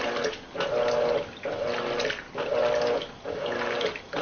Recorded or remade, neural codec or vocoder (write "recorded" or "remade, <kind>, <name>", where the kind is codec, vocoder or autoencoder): recorded